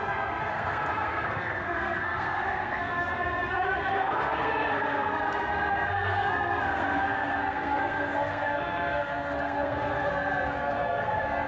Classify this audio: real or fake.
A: fake